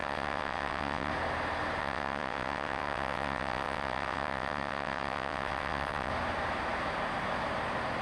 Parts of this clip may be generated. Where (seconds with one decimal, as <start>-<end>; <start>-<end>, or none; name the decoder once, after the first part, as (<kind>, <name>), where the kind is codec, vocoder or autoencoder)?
0.0-1.1 (vocoder, WaveNeXt); 1.8-6.1